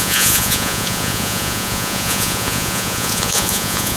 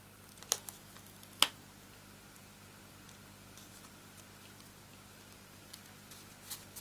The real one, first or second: second